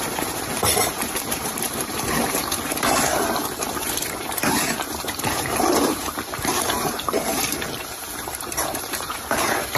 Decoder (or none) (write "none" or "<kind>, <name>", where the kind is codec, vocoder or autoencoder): vocoder, BigVGAN v2